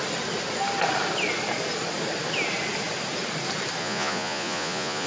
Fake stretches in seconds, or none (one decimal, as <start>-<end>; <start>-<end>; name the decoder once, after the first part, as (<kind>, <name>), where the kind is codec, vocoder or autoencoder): 3.8-5.1 (vocoder, Vocos)